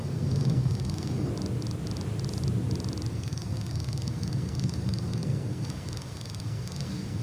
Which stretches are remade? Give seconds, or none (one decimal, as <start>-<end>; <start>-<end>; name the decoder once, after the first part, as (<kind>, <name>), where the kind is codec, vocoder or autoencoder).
0.0-1.3 (codec, SNAC); 3.1-7.2